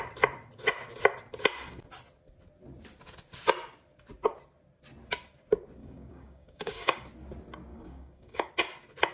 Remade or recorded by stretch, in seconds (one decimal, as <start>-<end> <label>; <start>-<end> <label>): 0.0-5.8 recorded; 5.8-7.1 remade; 7.1-7.7 recorded; 7.7-8.5 remade; 8.5-9.1 recorded